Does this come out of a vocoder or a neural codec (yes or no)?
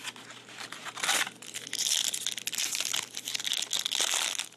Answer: no